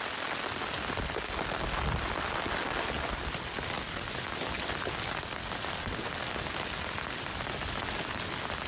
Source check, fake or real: real